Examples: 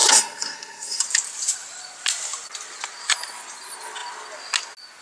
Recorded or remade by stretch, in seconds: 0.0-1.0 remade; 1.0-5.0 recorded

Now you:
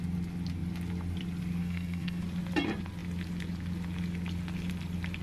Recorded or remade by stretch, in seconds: 0.0-1.6 recorded; 1.6-2.2 remade; 2.2-5.2 recorded

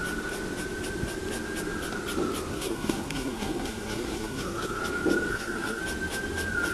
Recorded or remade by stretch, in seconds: 0.0-2.5 recorded; 2.5-4.8 remade; 4.8-5.3 recorded; 5.3-5.8 remade; 5.8-6.7 recorded

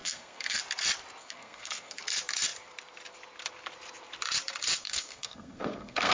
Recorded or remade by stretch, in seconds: 0.0-0.6 remade; 0.6-1.2 recorded; 1.2-2.0 remade; 2.0-4.8 recorded; 4.8-6.1 remade

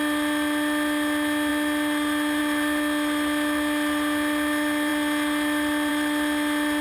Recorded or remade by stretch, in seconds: 0.0-6.8 recorded

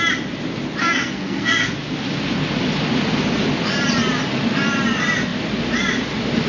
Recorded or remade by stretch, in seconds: 0.0-0.8 recorded; 0.8-1.7 remade; 1.7-6.5 recorded